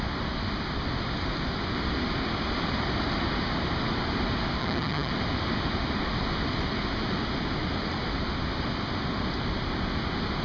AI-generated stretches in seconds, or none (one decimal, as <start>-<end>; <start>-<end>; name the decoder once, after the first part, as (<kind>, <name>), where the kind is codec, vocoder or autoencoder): 4.6-5.1 (vocoder, HiFi-GAN)